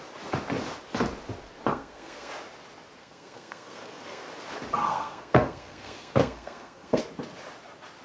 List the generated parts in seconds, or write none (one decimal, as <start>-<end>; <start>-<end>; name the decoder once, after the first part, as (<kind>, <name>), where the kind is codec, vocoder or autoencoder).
1.7-2.3 (codec, SNAC); 3.0-4.2; 4.8-7.0